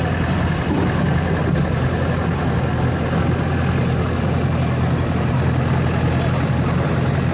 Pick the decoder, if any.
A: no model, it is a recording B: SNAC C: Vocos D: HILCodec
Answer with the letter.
A